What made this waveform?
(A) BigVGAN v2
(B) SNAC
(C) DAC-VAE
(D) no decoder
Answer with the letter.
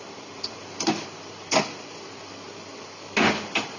D